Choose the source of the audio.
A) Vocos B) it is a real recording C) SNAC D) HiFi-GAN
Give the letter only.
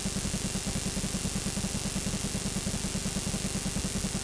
B